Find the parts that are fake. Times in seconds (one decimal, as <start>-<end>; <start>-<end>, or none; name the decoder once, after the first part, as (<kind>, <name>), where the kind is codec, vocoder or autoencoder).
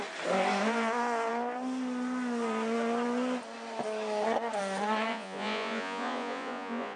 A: 5.1-7.0 (vocoder, Vocos)